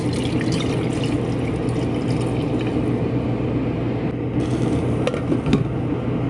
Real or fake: real